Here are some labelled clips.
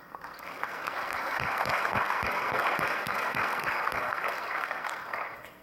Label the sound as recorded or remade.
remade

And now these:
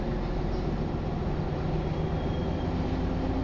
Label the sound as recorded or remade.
recorded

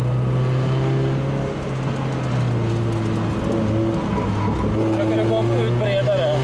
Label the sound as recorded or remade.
recorded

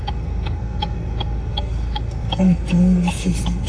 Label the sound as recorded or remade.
remade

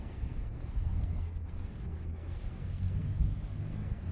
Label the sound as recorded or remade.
remade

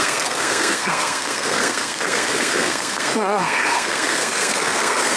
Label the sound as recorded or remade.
remade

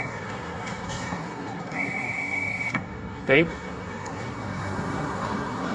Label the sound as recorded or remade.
remade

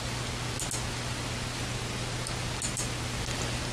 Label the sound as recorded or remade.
recorded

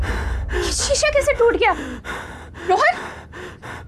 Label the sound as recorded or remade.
recorded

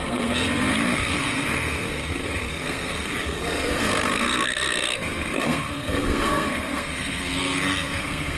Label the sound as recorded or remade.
remade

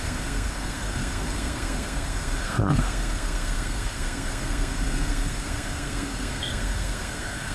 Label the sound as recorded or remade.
remade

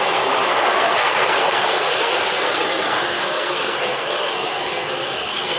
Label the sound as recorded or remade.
remade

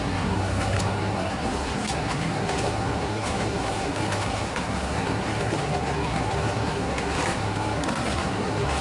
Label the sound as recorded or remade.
remade